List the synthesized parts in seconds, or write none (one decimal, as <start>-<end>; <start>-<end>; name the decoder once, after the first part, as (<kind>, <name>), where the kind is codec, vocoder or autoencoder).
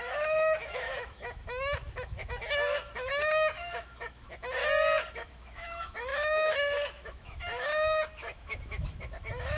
0.0-4.6 (autoencoder, DAC-VAE); 5.1-9.6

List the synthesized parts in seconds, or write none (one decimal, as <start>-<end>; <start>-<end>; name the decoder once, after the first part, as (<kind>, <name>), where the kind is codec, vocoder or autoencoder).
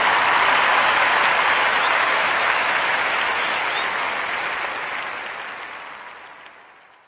0.7-1.2 (autoencoder, DAC-VAE); 1.7-3.6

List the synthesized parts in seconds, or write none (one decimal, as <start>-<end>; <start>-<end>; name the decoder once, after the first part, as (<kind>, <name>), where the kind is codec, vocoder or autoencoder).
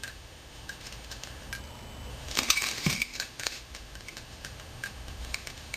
0.0-1.5 (autoencoder, DAC-VAE); 2.1-5.8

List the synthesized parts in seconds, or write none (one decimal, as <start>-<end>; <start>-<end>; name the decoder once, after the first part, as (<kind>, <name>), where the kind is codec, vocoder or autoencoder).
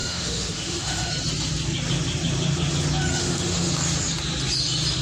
0.0-1.1 (autoencoder, DAC-VAE); 3.1-3.7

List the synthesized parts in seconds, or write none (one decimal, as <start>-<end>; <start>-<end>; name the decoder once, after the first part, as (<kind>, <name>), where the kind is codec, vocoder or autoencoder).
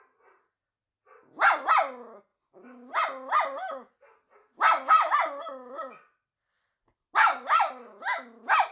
none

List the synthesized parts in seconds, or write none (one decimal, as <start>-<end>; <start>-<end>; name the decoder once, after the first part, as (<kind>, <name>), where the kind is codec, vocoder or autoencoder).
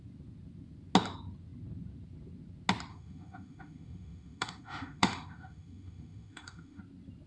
2.9-6.8 (autoencoder, DAC-VAE)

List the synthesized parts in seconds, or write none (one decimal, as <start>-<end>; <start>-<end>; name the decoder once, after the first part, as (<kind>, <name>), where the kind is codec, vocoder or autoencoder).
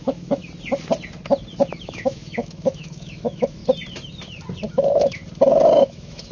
0.0-0.4 (autoencoder, DAC-VAE); 1.8-3.6; 4.7-5.2; 5.8-6.3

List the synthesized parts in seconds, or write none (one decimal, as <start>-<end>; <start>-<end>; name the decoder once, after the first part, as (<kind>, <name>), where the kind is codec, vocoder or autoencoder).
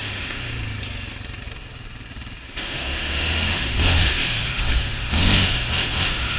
0.0-0.5 (autoencoder, DAC-VAE); 2.4-6.4